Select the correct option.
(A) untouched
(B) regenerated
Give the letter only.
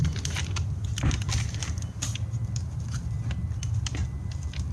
A